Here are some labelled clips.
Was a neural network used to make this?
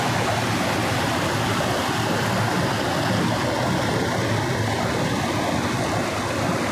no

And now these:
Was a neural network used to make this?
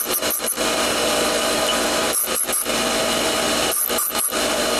no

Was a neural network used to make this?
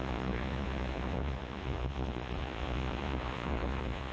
yes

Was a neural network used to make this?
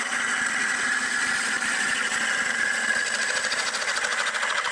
no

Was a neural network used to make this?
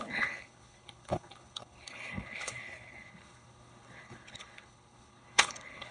yes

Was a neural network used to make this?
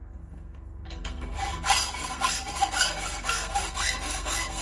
yes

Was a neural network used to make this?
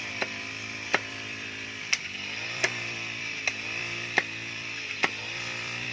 yes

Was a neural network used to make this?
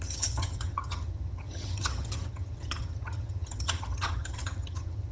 yes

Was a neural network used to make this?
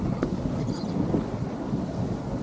no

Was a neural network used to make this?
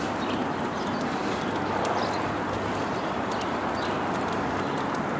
no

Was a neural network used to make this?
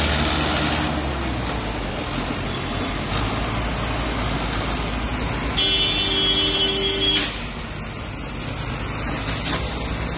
no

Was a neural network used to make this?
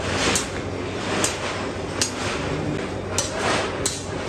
no